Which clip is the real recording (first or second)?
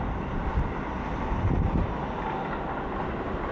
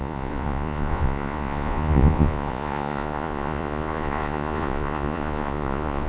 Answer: first